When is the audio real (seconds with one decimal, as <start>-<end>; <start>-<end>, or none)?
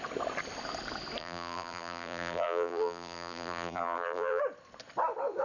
0.0-1.2; 4.4-5.4